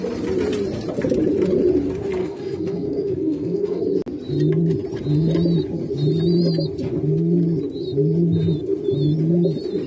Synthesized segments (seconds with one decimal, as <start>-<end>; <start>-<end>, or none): 2.2-3.8